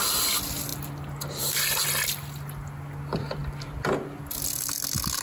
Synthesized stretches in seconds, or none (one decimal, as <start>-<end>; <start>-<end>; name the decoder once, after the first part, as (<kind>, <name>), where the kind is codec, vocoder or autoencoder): none